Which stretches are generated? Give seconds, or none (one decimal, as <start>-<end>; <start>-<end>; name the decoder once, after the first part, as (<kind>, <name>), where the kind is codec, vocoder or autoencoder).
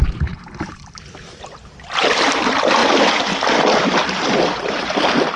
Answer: none